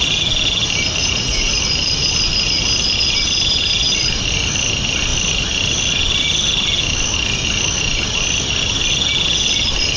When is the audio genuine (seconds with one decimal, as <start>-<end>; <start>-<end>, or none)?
0.0-1.0; 1.5-10.0